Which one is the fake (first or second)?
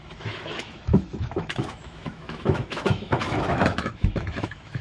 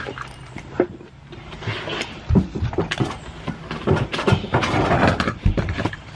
first